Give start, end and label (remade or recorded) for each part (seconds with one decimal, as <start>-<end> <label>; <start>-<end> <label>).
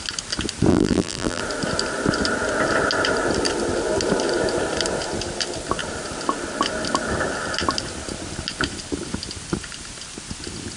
0.0-0.7 recorded; 0.7-1.4 remade; 1.4-10.8 recorded